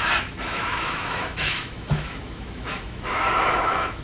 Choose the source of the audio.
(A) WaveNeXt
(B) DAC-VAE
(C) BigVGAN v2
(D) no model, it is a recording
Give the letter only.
B